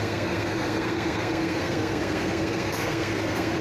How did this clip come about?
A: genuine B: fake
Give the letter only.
B